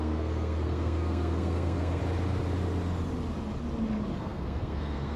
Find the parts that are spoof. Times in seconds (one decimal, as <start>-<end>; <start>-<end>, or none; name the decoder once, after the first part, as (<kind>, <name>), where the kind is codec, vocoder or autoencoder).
0.0-2.0 (codec, SNAC); 4.2-5.2